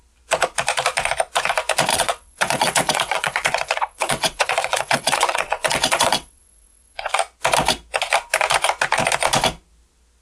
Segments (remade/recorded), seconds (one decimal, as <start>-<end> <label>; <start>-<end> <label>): 0.0-1.9 recorded; 1.9-7.1 remade; 7.1-10.2 recorded